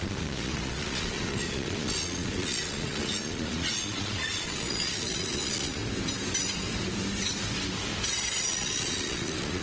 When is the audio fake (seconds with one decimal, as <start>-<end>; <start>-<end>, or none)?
0.0-5.8; 8.4-9.6